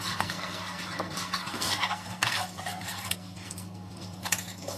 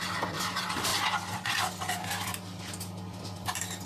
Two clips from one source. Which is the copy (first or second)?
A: first